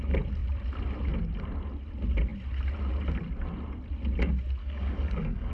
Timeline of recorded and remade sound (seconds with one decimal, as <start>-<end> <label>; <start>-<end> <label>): 0.0-4.6 recorded; 4.6-5.5 remade